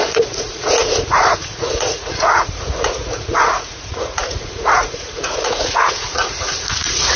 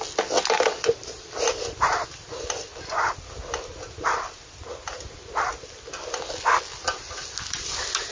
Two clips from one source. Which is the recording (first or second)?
second